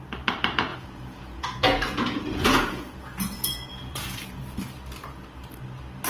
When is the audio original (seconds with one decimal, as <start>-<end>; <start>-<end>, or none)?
0.0-0.7; 4.4-6.1